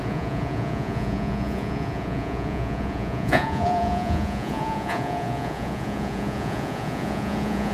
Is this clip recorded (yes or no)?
no